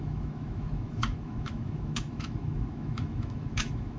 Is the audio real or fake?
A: fake